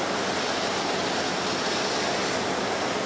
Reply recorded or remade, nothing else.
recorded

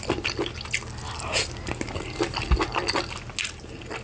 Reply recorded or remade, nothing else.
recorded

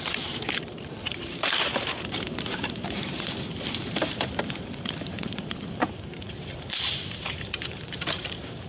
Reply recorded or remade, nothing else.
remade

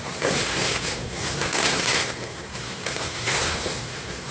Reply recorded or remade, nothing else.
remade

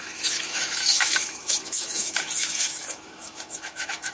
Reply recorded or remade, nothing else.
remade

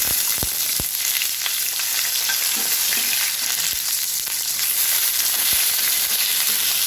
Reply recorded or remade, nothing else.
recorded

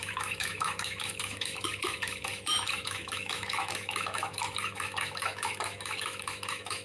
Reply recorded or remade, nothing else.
remade